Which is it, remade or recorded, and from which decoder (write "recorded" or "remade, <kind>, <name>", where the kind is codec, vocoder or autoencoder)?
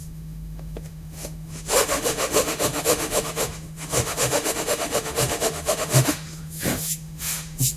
remade, autoencoder, DAC-VAE